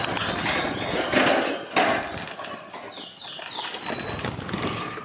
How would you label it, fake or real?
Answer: real